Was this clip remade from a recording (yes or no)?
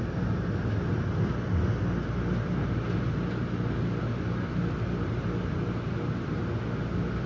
no